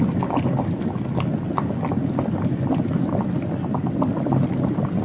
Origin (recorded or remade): recorded